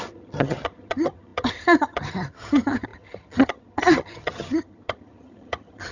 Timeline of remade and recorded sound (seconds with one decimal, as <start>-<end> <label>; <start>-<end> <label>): 0.0-5.9 remade